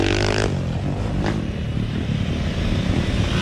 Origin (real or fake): real